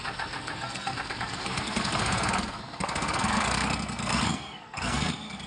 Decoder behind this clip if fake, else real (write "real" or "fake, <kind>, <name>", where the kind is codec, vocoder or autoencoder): fake, codec, SNAC